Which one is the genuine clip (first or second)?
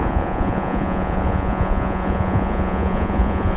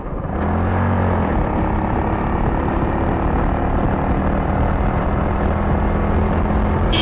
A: second